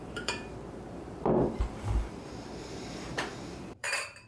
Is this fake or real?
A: fake